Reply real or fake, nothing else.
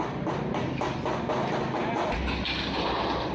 real